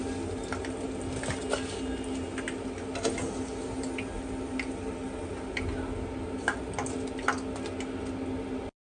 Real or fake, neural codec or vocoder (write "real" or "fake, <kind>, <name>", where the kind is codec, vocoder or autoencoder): real